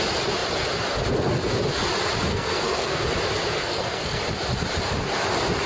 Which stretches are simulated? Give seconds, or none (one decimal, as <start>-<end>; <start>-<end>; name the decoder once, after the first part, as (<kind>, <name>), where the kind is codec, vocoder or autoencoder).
2.3-3.0 (codec, SNAC); 3.6-4.2